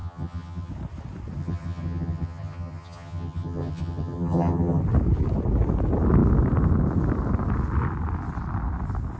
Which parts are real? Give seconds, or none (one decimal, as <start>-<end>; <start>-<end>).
0.7-1.4; 4.8-9.2